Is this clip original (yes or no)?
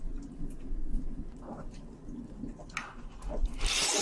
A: yes